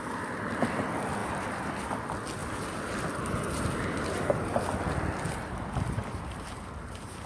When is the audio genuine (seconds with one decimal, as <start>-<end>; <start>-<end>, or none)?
0.0-1.2; 1.7-2.4; 4.6-6.0